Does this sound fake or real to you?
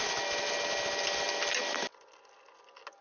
real